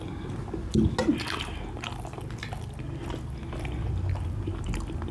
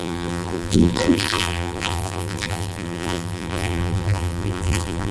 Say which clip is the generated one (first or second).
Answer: second